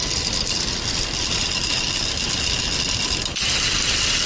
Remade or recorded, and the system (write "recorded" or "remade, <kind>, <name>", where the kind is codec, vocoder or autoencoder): recorded